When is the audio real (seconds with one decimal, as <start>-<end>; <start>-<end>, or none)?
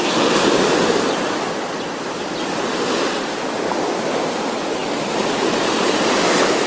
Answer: 0.0-6.7